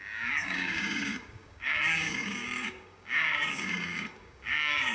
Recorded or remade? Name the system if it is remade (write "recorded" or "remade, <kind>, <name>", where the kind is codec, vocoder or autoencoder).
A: remade, codec, DAC